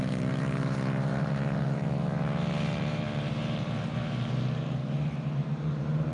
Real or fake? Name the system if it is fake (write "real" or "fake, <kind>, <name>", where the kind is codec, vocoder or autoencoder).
fake, vocoder, BigVGAN v2